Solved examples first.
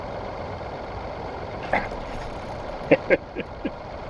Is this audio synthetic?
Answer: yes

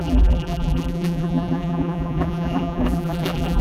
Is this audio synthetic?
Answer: yes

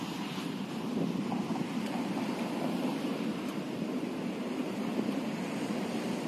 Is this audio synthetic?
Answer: no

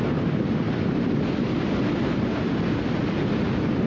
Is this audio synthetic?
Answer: no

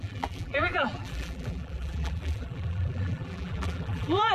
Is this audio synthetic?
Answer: yes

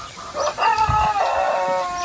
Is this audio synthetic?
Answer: no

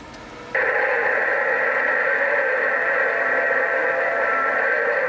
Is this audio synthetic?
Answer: no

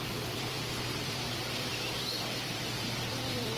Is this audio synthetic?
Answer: yes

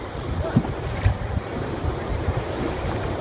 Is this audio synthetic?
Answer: yes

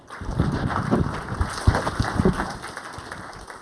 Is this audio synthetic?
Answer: no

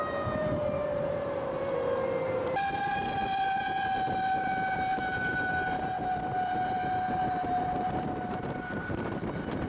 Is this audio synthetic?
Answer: yes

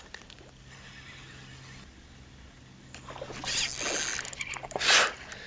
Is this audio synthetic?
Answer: no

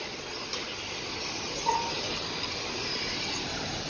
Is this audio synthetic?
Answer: no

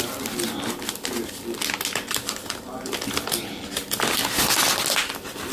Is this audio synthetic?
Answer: no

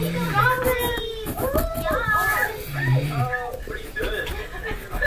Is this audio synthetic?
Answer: no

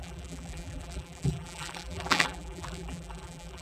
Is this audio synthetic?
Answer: yes